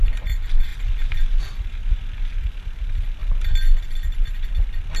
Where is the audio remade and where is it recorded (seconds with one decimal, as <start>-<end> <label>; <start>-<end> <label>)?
0.0-5.0 recorded